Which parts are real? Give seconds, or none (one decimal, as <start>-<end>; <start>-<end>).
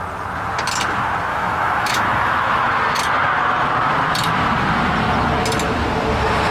0.0-1.3; 2.6-6.5